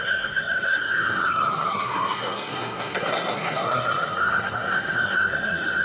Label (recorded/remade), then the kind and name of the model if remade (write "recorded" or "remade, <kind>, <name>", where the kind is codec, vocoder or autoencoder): remade, codec, SNAC